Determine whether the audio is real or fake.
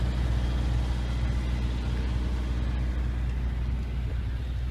real